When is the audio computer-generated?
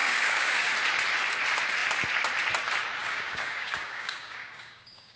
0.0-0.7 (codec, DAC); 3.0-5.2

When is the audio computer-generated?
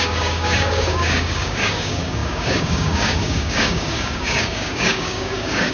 0.0-5.7 (codec, DAC)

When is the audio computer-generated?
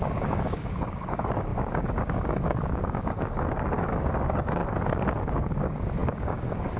0.0-4.6 (codec, DAC); 5.2-6.8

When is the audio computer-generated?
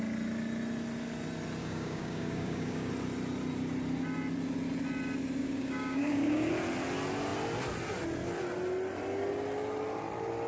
1.6-2.9 (codec, DAC); 5.4-6.5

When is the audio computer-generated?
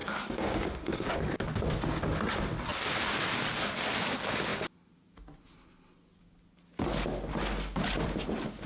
0.0-1.1 (codec, DAC)